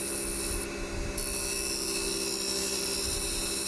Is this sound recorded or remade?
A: recorded